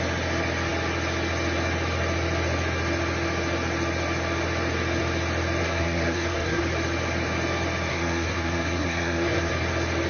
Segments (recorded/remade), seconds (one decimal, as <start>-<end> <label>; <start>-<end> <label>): 0.0-5.6 recorded; 5.6-6.6 remade; 6.6-7.9 recorded; 7.9-9.5 remade; 9.5-10.1 recorded